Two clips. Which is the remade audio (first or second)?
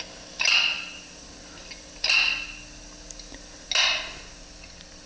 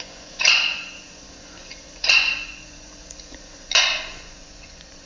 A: second